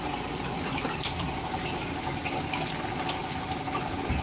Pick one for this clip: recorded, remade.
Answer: recorded